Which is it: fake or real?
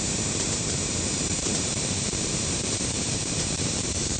fake